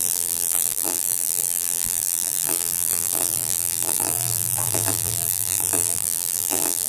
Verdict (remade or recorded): remade